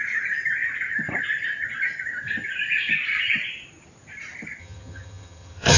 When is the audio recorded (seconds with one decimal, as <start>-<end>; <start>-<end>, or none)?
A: 0.0-4.6